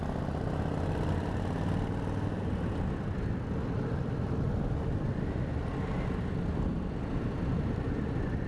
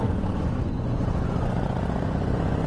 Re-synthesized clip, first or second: second